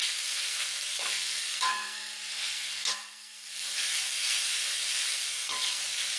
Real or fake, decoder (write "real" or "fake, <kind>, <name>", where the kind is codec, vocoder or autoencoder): fake, codec, SNAC